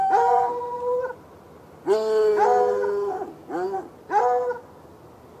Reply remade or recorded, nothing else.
recorded